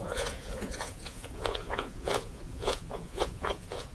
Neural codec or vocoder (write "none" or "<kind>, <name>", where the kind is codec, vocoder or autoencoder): vocoder, Vocos